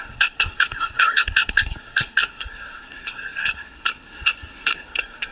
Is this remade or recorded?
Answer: remade